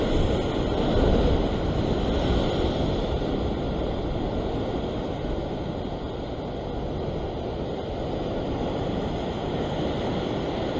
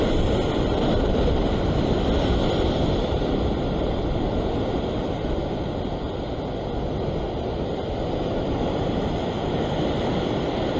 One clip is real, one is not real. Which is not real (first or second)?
second